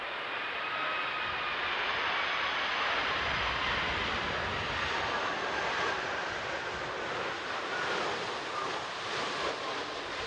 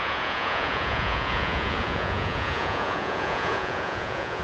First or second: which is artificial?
second